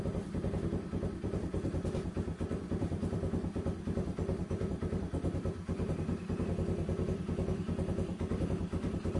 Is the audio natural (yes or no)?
no